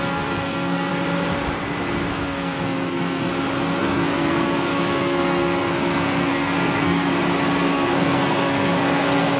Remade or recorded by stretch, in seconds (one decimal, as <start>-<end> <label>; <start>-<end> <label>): 0.0-0.9 remade; 0.9-2.1 recorded; 2.1-3.3 remade; 3.3-3.8 recorded; 3.8-7.1 remade; 7.1-7.6 recorded; 7.6-9.4 remade